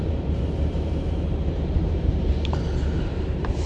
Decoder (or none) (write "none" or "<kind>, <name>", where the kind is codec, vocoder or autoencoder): vocoder, BigVGAN v2